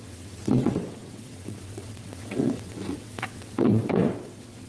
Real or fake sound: fake